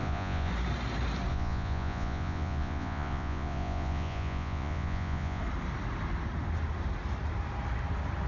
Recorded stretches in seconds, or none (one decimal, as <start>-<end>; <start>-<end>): 0.5-1.3; 5.4-8.3